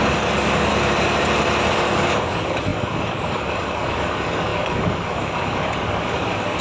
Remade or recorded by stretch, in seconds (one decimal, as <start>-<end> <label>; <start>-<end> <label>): 0.0-0.7 remade; 0.7-1.7 recorded; 1.7-6.6 remade